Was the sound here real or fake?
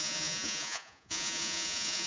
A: fake